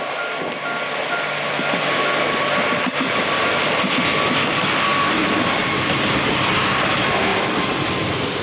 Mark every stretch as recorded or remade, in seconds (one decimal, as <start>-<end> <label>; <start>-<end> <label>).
0.0-8.4 recorded